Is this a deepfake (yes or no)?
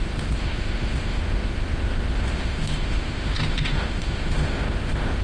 yes